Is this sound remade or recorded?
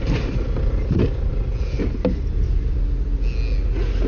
recorded